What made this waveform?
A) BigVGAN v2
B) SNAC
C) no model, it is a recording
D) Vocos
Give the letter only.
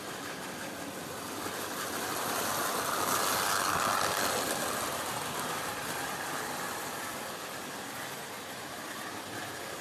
A